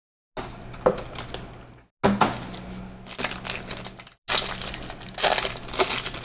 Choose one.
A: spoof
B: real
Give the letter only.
B